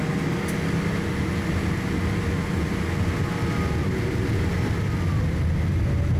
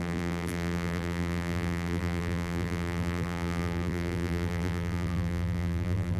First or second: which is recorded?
first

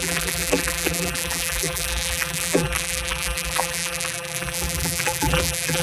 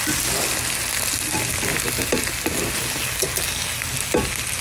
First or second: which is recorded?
second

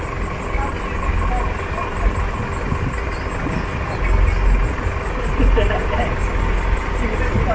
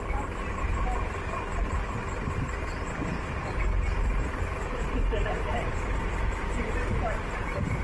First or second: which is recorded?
first